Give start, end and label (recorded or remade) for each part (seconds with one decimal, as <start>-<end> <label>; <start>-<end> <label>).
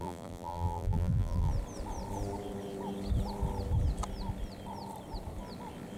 0.0-1.5 remade; 1.5-6.0 recorded